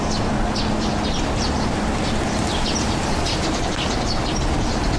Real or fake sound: real